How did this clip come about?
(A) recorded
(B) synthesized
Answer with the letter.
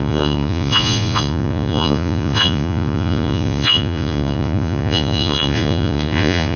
B